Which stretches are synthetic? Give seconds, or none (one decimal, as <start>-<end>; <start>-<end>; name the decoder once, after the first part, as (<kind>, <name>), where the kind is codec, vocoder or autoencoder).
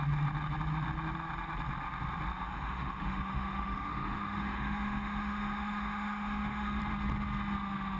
2.4-6.8 (autoencoder, DAC-VAE)